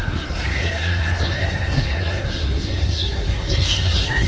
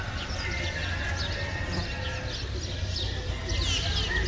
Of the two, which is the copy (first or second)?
first